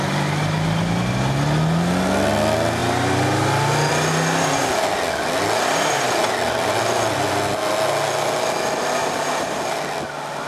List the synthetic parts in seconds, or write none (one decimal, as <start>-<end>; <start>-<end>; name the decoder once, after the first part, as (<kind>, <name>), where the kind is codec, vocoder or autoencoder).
9.0-9.6 (vocoder, BigVGAN v2)